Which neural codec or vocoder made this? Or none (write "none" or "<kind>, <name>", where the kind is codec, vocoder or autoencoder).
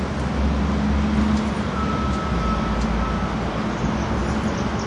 none